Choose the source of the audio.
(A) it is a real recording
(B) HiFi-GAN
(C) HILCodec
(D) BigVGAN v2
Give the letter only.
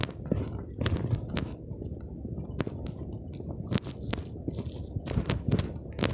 A